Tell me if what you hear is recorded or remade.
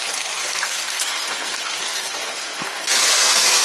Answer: remade